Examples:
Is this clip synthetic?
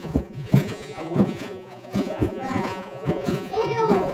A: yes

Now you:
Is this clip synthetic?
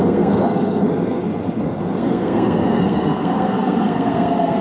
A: yes